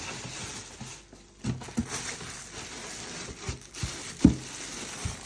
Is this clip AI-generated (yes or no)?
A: no